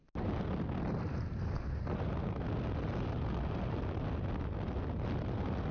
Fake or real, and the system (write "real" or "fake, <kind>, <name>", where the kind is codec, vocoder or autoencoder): real